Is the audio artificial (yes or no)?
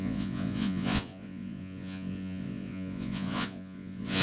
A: yes